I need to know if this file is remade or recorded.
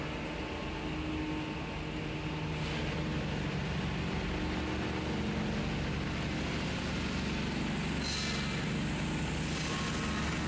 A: recorded